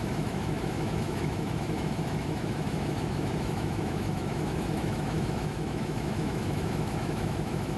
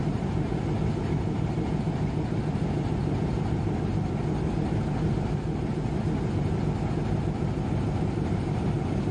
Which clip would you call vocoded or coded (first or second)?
first